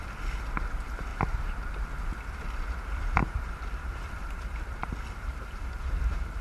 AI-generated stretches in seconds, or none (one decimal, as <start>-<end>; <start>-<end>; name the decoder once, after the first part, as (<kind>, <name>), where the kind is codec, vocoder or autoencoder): 3.2-6.4 (vocoder, BigVGAN v2)